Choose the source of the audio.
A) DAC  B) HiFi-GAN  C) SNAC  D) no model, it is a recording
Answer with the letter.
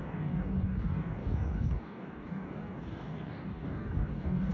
A